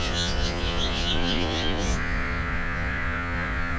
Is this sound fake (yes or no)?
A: yes